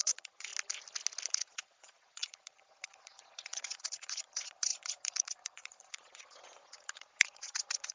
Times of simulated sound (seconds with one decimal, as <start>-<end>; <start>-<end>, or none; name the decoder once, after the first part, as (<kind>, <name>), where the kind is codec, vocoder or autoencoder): 0.0-0.5 (vocoder, Vocos); 1.3-7.9